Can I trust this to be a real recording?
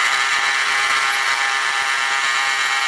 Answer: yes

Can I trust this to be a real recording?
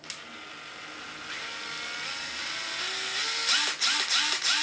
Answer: yes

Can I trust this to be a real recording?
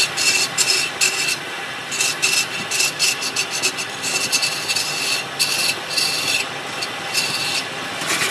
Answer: yes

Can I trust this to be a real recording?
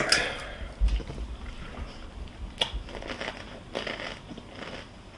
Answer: yes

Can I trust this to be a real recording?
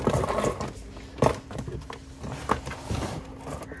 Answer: yes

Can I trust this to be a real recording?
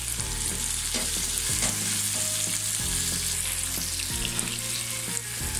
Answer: yes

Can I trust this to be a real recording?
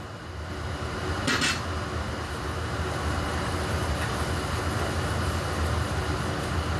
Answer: yes